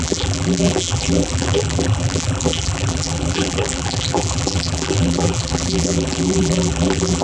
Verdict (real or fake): fake